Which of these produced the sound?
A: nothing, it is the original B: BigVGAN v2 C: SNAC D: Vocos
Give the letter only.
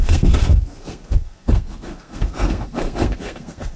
C